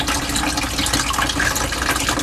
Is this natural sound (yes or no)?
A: yes